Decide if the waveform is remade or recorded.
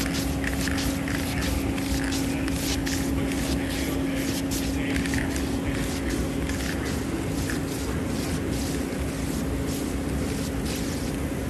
recorded